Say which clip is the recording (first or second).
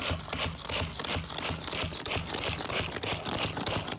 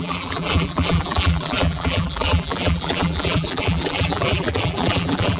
first